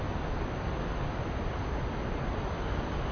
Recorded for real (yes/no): yes